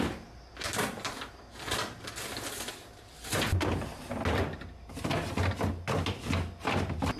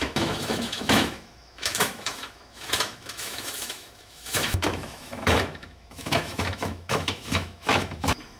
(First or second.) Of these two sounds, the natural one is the first